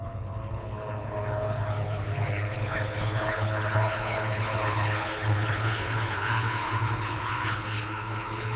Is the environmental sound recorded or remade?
remade